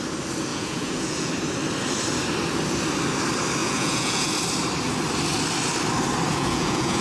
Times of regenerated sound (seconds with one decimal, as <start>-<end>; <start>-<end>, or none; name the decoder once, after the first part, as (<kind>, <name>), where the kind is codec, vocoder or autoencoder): 0.5-1.3 (vocoder, Vocos); 3.6-4.3; 6.3-7.0